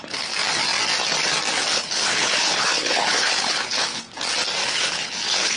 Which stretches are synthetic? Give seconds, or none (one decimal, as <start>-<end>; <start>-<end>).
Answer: 1.7-4.0; 4.6-5.6